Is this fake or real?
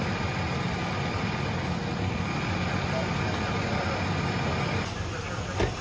real